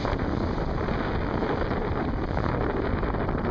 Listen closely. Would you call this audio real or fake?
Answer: real